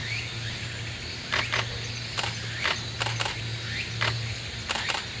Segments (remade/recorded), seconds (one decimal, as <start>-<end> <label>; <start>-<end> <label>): 0.0-5.2 recorded